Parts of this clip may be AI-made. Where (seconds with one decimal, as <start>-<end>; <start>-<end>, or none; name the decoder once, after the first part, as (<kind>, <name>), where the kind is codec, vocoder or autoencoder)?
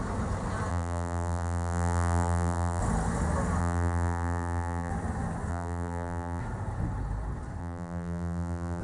0.7-2.8 (vocoder, BigVGAN v2); 3.6-4.9; 5.5-6.4; 7.6-8.8